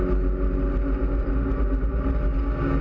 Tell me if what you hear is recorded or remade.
recorded